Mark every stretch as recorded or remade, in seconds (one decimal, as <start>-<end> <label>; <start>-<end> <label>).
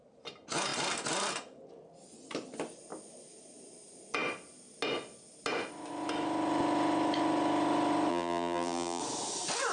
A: 0.0-8.1 recorded; 8.1-9.0 remade; 9.0-9.7 recorded